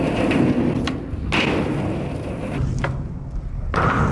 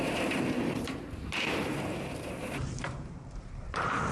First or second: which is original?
first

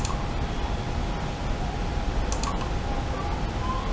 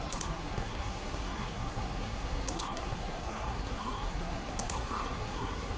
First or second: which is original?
first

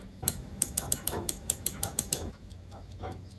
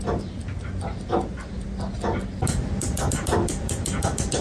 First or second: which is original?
second